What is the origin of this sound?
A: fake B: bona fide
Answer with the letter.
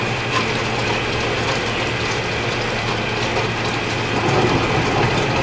B